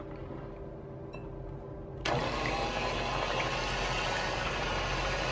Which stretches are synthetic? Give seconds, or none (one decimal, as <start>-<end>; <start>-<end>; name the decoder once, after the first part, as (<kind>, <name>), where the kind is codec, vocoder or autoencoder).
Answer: none